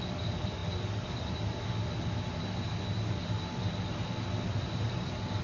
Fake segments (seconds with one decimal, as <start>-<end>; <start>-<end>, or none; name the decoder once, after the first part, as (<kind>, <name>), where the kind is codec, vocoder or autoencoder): none